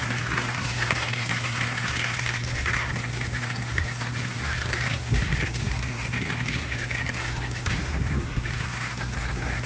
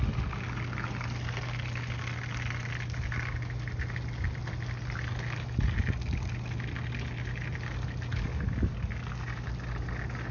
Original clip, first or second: second